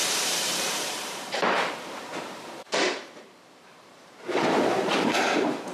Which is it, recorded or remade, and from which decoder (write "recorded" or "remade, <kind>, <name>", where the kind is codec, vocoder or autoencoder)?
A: remade, vocoder, BigVGAN v2